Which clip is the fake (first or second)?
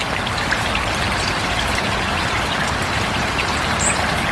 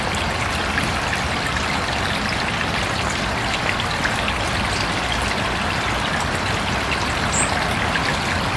first